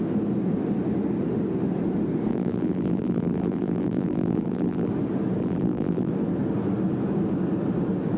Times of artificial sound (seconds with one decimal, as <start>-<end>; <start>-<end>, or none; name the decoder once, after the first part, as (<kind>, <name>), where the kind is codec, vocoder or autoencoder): 2.3-4.9 (vocoder, BigVGAN v2); 5.4-6.1